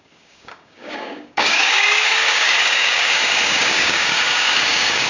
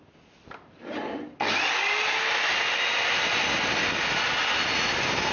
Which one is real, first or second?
second